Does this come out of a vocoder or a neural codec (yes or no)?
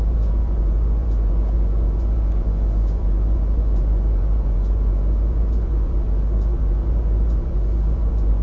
yes